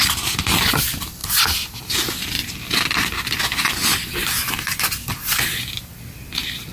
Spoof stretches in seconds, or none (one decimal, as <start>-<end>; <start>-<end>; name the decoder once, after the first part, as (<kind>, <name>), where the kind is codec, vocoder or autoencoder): none